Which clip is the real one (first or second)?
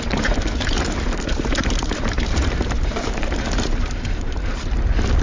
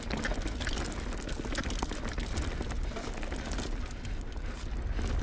second